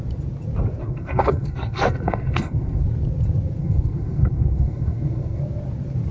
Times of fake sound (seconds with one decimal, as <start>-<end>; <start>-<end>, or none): 0.8-2.8; 3.6-5.4